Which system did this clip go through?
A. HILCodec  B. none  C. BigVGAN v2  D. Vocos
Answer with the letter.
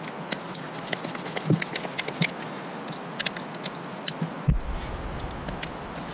B